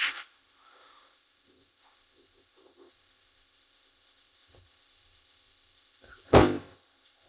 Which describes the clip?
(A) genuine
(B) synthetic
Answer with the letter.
B